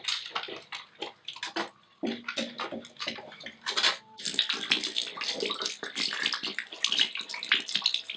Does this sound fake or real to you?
real